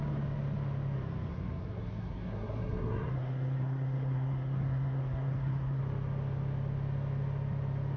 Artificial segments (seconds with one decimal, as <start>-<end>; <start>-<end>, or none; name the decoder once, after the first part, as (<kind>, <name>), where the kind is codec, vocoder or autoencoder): 1.3-5.8 (codec, SNAC)